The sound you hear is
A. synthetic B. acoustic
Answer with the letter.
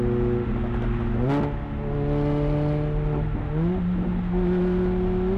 B